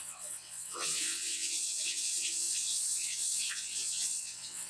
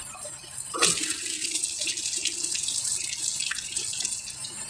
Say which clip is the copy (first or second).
first